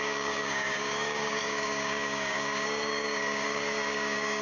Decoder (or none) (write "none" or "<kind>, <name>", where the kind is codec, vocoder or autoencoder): codec, DAC